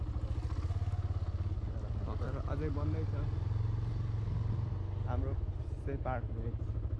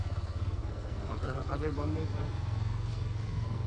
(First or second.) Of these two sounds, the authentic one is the first